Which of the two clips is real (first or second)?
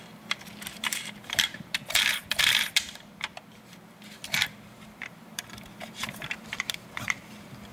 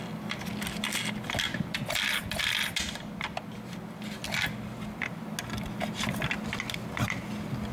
second